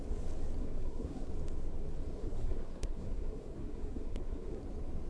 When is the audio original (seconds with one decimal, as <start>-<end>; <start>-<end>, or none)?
0.0-0.6; 1.3-2.2; 4.6-5.1